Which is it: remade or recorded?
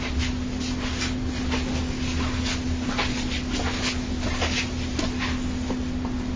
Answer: recorded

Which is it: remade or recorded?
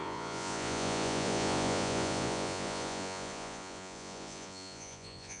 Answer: remade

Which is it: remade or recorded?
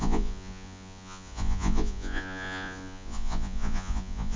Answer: remade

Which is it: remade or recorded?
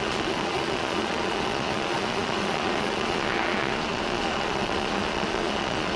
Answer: remade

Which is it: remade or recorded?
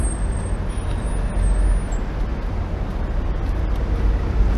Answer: recorded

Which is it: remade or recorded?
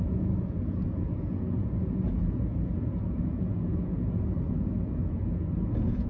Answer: remade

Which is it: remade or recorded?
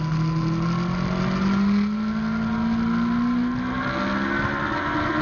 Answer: recorded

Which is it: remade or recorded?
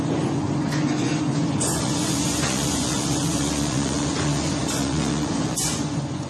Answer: remade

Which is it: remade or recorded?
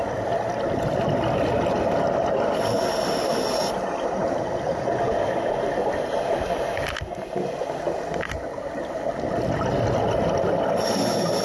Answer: recorded